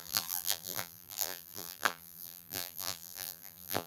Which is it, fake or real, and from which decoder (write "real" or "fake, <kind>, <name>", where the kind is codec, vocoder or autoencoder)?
fake, vocoder, BigVGAN v2